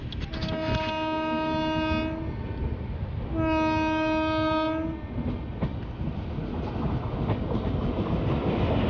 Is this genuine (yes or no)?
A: yes